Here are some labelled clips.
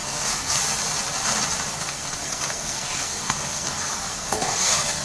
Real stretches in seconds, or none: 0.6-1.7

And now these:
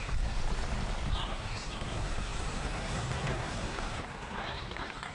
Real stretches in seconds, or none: 0.4-1.1

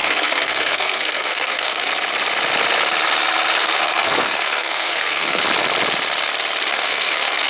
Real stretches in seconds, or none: 1.9-3.6; 5.4-6.7

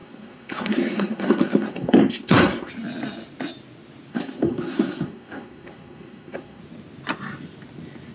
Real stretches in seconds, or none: 2.7-4.1; 6.6-8.1